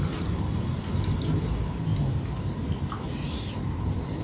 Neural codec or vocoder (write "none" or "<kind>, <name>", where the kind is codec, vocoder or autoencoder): none